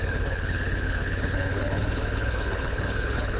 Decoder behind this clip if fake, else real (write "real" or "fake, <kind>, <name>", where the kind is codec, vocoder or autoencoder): fake, codec, HILCodec